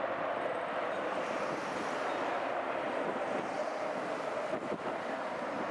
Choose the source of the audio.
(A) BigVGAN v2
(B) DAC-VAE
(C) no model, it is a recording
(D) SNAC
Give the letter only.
A